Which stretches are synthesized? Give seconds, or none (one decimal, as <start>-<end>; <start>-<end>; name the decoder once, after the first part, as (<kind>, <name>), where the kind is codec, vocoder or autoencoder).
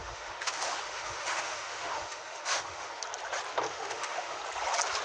0.0-3.0 (autoencoder, DAC-VAE); 3.7-4.4